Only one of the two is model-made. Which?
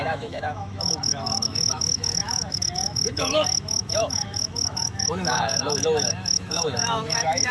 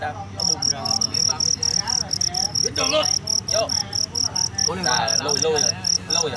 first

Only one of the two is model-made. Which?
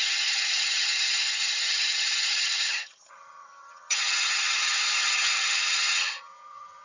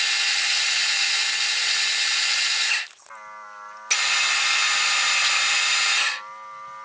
first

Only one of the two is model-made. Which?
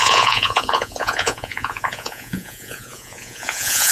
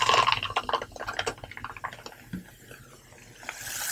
first